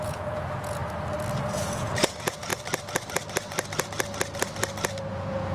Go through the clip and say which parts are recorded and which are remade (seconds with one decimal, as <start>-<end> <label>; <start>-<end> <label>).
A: 0.0-0.8 remade; 0.8-1.6 recorded; 1.6-2.5 remade; 2.5-5.1 recorded; 5.1-5.5 remade